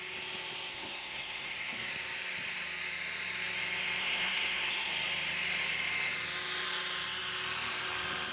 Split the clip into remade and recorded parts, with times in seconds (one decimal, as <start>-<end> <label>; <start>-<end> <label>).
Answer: 0.0-0.7 recorded; 0.7-1.9 remade; 1.9-4.0 recorded; 4.0-4.9 remade; 4.9-8.3 recorded